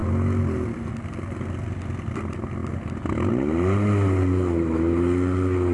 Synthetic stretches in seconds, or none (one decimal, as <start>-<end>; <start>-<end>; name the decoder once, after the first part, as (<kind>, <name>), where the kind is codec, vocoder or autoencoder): none